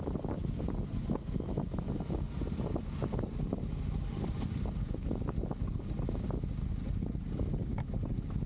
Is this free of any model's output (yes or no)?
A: yes